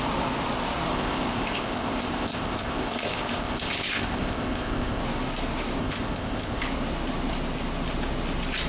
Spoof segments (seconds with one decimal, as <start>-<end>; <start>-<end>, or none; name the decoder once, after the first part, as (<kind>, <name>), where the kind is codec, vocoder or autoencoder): 0.9-5.0 (codec, ZipCodec); 5.8-6.6